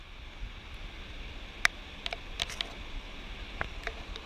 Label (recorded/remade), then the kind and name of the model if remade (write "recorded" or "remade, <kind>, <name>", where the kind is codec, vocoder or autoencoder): recorded